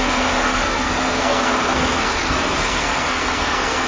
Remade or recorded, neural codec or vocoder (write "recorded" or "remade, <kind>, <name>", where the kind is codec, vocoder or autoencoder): remade, codec, SNAC